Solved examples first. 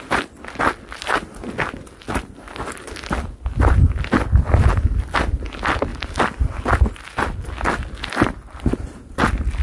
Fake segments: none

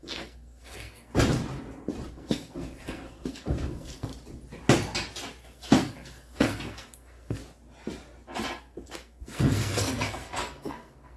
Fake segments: 0.0-1.1 (codec, SNAC); 2.1-4.1; 5.4-7.4; 8.6-11.2

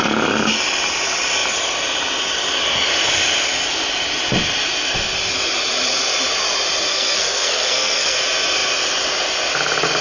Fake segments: 6.9-8.2 (codec, SNAC)